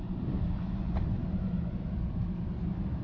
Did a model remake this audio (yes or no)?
no